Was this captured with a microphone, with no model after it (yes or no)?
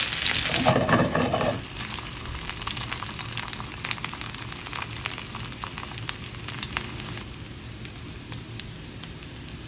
yes